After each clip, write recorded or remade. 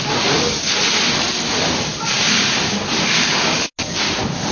recorded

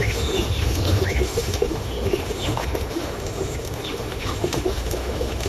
remade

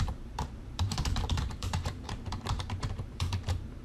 remade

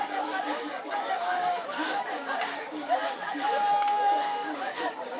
remade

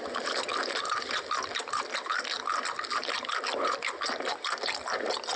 recorded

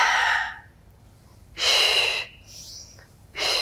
recorded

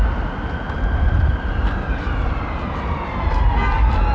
recorded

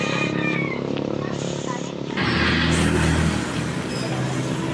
recorded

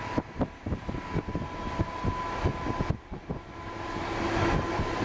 recorded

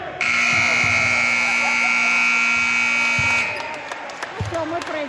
recorded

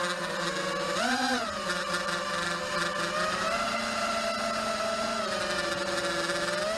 recorded